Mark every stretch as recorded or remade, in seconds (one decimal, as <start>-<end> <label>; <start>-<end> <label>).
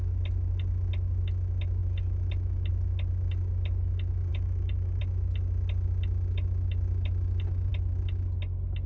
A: 0.0-4.3 recorded; 4.3-5.0 remade; 5.0-8.9 recorded